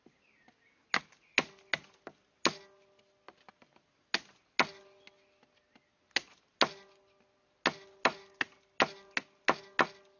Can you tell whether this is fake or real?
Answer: real